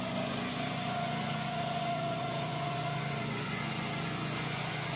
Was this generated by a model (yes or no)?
yes